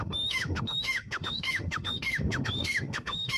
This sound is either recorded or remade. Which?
remade